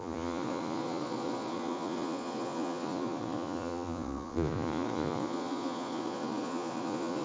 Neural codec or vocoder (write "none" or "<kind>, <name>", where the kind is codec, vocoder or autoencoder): vocoder, Vocos